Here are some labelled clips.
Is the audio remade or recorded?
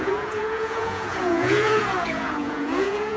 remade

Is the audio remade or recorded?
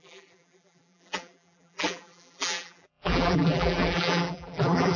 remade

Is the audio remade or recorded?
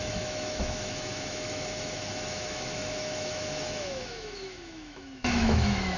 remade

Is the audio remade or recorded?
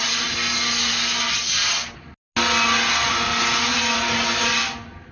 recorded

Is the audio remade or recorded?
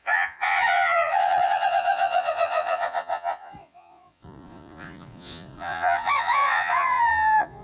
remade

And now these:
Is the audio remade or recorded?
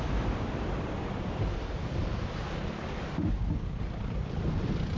recorded